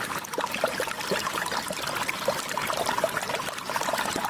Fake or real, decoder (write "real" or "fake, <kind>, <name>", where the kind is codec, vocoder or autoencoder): real